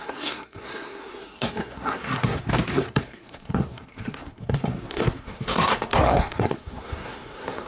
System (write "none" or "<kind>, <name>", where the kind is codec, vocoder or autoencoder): codec, SNAC